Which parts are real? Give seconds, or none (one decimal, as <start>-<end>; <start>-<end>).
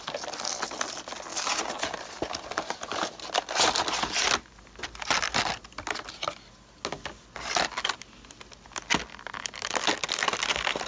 0.0-10.9